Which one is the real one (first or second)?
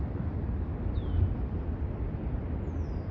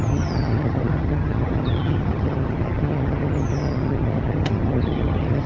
first